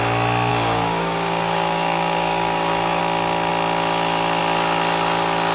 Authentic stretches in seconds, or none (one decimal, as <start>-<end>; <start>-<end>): 0.0-0.5; 3.0-5.5